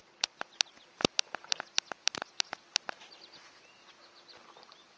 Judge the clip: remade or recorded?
recorded